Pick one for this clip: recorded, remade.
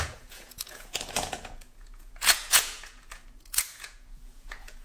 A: remade